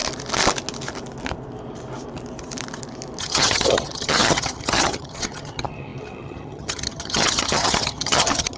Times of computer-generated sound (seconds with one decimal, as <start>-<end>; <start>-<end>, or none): 3.2-8.6